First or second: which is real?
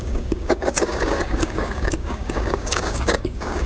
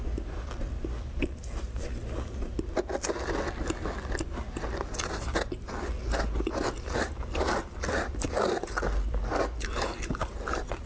second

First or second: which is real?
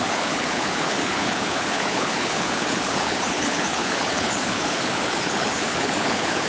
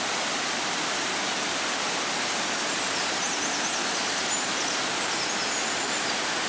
second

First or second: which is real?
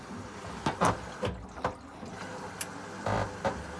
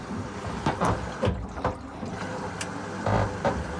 first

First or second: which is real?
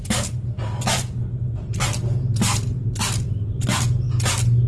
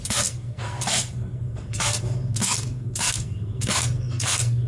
first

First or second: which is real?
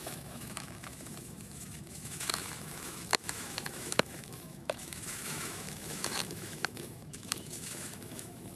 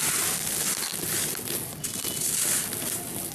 second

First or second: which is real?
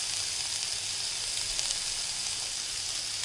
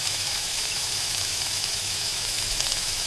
first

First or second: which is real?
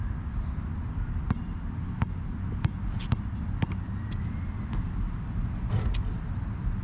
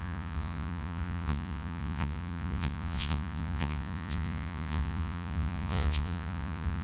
first